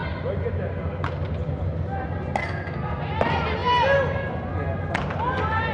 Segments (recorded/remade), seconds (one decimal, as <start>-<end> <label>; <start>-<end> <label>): 0.0-2.4 recorded; 2.4-3.0 remade; 3.0-5.7 recorded